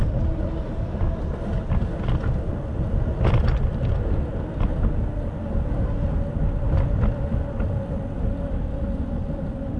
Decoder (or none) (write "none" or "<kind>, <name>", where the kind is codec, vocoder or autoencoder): none